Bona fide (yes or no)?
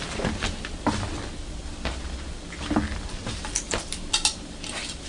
yes